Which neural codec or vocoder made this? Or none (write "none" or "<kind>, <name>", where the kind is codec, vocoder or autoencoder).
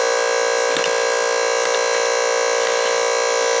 none